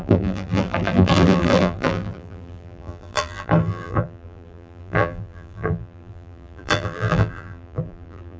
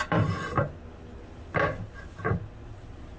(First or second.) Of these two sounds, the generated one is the first